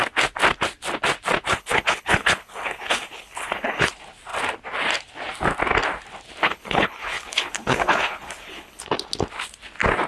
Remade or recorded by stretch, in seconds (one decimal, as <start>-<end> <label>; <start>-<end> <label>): 0.0-1.5 recorded; 1.5-3.9 remade; 3.9-6.4 recorded; 6.4-8.8 remade; 8.8-10.1 recorded